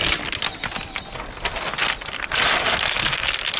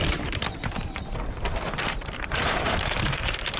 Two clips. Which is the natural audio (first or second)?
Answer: first